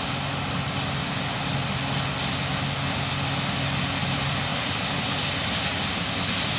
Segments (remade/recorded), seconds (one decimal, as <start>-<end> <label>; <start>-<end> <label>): 0.0-6.6 recorded